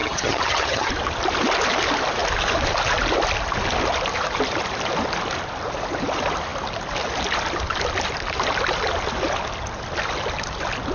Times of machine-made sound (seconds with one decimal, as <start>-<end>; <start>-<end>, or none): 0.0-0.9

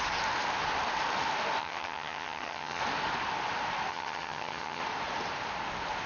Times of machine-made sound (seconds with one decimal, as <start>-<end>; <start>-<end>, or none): 1.6-2.8; 3.9-4.8

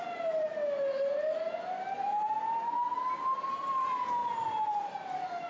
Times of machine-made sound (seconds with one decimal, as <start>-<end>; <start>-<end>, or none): none

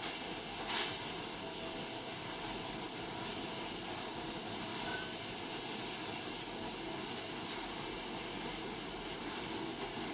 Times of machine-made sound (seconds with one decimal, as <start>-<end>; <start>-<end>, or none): none

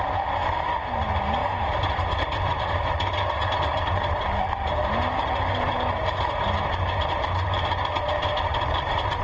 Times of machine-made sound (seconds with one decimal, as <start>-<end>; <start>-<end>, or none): none

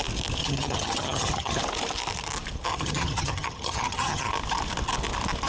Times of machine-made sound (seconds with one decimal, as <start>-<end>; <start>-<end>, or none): 0.4-1.6; 2.7-4.3